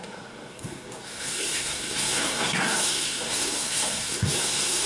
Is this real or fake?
fake